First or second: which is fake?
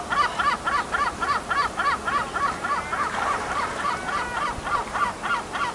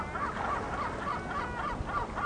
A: first